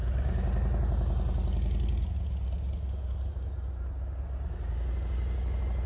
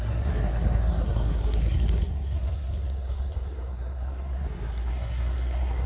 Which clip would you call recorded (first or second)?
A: first